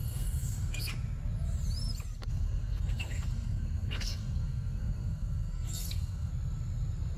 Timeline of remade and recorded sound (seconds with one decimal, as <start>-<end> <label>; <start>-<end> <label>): 0.0-0.9 remade; 0.9-2.3 recorded; 2.3-6.3 remade; 6.3-7.2 recorded